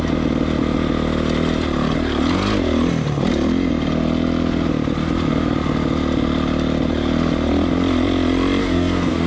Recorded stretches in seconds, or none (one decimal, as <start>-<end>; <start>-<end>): 0.0-8.6